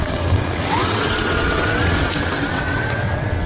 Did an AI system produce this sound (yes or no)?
yes